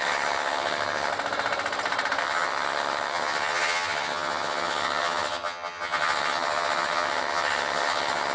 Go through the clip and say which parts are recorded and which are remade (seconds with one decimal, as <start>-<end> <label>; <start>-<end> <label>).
0.0-1.1 remade; 1.1-2.2 recorded; 2.2-8.3 remade

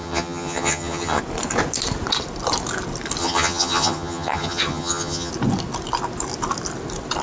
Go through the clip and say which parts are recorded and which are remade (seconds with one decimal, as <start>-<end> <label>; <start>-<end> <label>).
0.0-1.2 remade; 1.2-3.2 recorded; 3.2-5.3 remade; 5.3-7.2 recorded

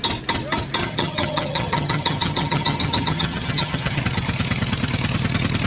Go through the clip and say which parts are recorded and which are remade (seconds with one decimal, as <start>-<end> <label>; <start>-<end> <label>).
0.0-0.8 recorded; 0.8-4.0 remade; 4.0-5.7 recorded